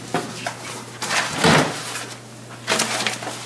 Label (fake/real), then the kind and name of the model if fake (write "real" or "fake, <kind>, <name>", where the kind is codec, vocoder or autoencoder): real